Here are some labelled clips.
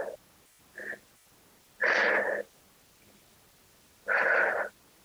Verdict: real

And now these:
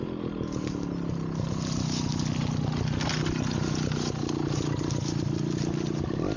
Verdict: real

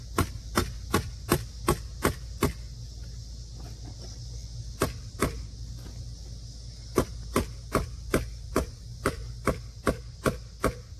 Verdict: real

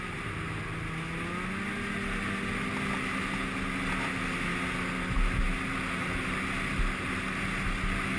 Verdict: real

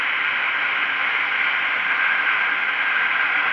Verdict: real